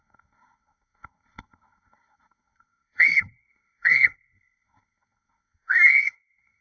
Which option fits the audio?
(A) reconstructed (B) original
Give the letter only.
A